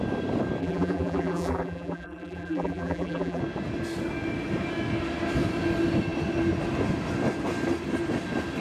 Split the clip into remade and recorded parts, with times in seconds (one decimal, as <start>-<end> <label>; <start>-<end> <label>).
0.0-0.6 recorded; 0.6-3.4 remade; 3.4-8.6 recorded